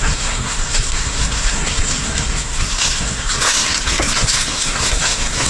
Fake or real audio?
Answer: fake